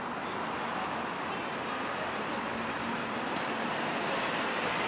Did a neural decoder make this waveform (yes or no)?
no